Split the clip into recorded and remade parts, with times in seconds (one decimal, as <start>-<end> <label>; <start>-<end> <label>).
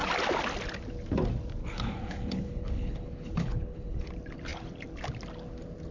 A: 0.0-1.6 recorded; 1.6-4.1 remade; 4.1-5.9 recorded